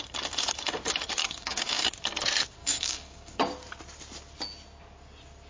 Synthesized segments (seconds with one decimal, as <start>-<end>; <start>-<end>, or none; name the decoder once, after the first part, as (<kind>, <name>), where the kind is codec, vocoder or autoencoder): 1.2-1.9 (codec, DAC); 2.6-3.4